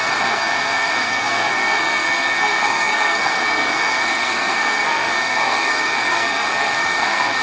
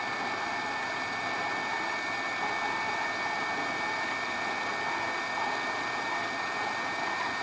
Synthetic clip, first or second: first